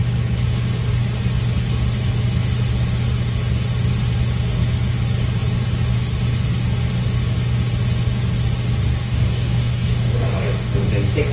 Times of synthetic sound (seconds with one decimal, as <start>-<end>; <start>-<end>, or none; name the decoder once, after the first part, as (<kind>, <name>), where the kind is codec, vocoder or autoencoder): 9.0-10.9 (codec, DAC)